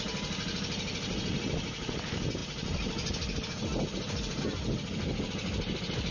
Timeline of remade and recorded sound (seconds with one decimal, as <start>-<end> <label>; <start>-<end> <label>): 0.0-6.1 recorded